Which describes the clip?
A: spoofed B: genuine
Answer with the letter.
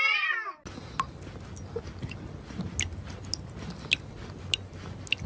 B